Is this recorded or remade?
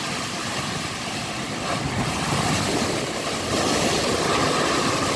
recorded